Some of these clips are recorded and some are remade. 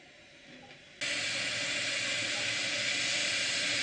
recorded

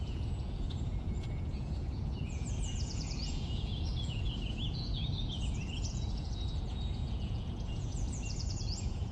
remade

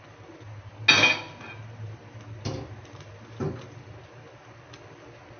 recorded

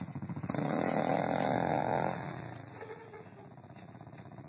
remade